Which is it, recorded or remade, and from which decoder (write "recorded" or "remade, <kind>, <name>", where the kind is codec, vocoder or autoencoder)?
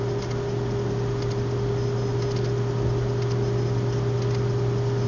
recorded